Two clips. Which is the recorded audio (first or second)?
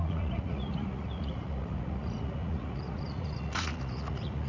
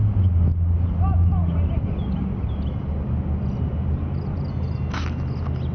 second